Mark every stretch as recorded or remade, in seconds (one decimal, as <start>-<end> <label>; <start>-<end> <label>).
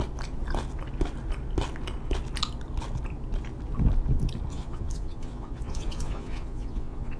0.0-4.5 recorded; 4.5-7.2 remade